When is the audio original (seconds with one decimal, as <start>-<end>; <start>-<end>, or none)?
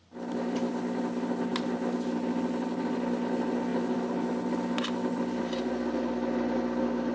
0.0-7.1